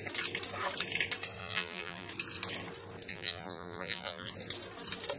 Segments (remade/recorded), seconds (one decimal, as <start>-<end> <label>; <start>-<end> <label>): 0.0-1.4 recorded; 1.4-2.1 remade; 2.1-3.1 recorded; 3.1-4.3 remade; 4.3-5.2 recorded